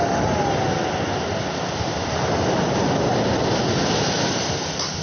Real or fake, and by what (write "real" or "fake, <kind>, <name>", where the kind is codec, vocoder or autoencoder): real